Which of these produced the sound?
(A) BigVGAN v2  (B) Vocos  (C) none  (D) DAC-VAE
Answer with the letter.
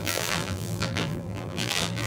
A